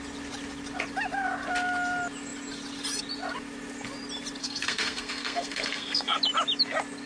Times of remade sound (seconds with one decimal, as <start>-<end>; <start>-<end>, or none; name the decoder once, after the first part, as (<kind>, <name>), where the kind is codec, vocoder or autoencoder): 4.4-6.2 (codec, SNAC)